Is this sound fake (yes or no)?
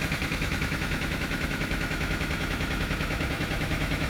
yes